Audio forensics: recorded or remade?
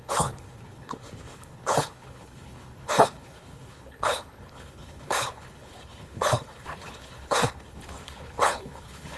remade